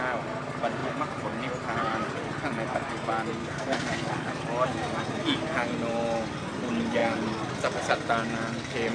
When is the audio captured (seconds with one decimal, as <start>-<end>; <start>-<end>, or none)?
0.0-3.4; 4.3-8.9

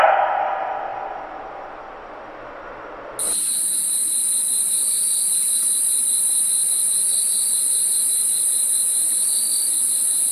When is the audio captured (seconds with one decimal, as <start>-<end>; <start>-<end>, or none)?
0.0-6.6; 9.4-10.3

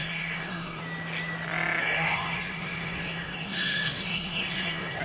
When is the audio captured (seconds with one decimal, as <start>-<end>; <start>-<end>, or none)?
0.8-1.8

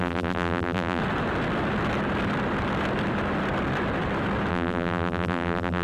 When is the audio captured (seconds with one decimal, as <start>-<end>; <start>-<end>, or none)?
1.0-4.5